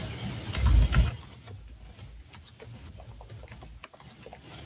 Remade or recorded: recorded